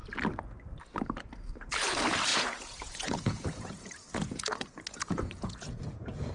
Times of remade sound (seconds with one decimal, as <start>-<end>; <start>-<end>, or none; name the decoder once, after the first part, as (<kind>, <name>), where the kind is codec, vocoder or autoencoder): 2.3-6.3 (vocoder, Vocos)